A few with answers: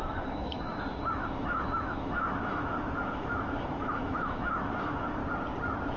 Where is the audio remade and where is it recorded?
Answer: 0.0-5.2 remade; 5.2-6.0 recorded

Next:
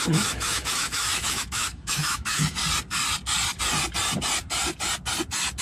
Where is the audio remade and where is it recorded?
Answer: 0.0-2.6 remade; 2.6-5.6 recorded